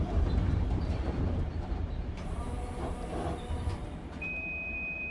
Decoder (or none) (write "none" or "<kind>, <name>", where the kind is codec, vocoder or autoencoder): vocoder, BigVGAN v2